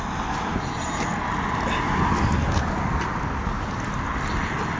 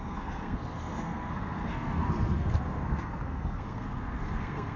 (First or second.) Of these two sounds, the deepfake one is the second